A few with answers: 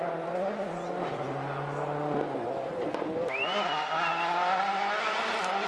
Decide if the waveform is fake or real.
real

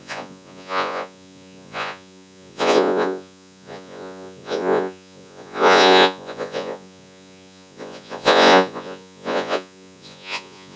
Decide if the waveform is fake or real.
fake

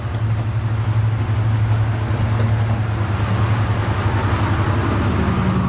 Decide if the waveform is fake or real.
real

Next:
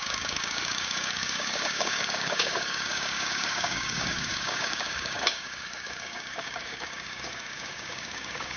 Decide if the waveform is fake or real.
fake